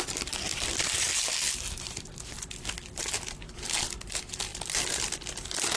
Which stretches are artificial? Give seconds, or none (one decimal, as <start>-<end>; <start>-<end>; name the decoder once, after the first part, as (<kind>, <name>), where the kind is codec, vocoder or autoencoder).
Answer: 0.5-1.1 (vocoder, BigVGAN v2)